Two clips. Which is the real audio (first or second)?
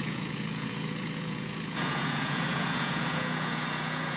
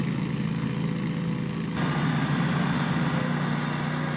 second